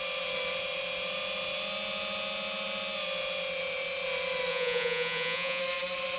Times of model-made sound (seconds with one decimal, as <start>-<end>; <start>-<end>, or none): 4.5-5.6